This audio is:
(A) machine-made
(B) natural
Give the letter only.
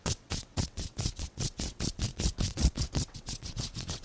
A